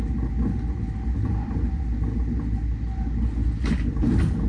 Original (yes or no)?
yes